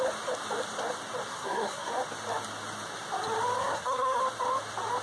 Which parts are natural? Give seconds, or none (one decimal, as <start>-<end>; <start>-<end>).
0.0-1.3; 1.9-3.6; 4.2-5.0